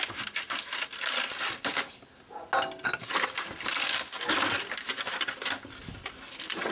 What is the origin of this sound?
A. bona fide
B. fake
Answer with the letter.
A